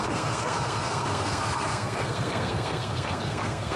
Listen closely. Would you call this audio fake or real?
fake